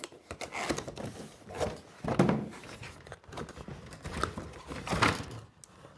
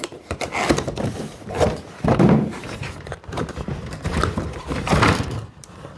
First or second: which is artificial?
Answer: second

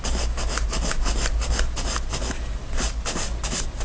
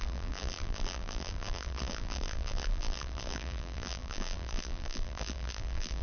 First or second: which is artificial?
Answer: second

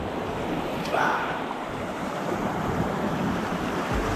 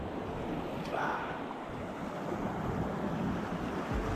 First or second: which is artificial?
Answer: first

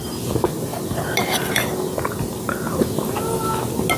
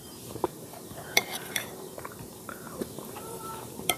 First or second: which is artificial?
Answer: second